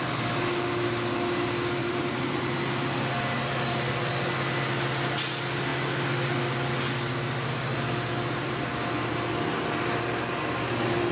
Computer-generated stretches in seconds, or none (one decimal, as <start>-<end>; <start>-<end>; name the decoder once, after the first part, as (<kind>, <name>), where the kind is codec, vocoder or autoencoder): 1.8-3.9 (vocoder, BigVGAN v2)